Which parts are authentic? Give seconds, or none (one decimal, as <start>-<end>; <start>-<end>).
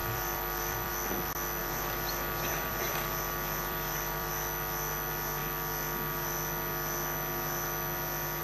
0.9-1.6; 4.3-8.4